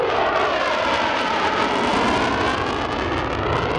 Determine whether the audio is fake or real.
real